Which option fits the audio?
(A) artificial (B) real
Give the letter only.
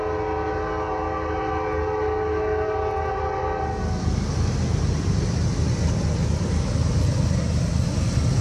B